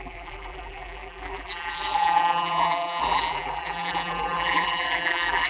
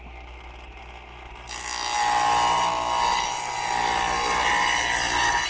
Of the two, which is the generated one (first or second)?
first